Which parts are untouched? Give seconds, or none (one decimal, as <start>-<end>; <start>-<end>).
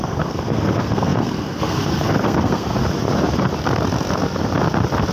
2.8-5.1